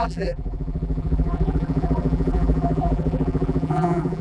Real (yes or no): no